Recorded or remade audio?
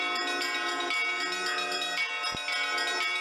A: recorded